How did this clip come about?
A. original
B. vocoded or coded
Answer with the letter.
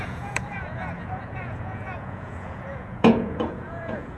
B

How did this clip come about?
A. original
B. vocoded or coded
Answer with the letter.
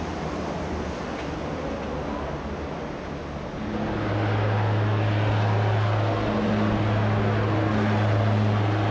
A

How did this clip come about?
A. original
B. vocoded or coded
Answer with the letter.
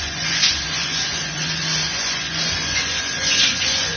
B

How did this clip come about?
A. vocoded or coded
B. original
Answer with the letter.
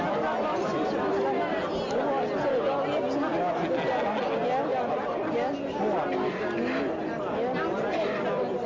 B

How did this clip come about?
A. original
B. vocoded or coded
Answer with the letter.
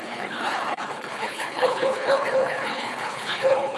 B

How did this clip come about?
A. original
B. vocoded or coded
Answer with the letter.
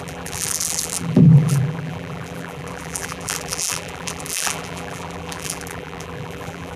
B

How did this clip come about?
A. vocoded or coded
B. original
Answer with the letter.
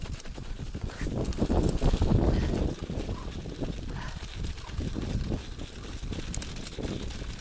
B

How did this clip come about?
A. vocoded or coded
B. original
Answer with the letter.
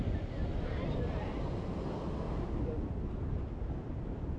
B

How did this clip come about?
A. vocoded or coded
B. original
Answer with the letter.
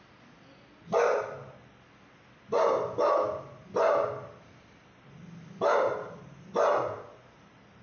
B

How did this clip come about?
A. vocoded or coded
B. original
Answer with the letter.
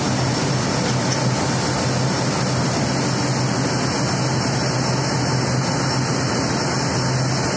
B